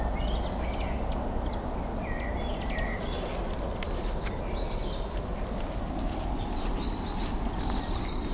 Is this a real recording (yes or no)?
yes